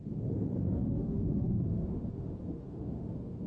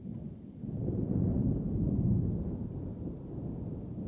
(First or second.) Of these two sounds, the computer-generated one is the first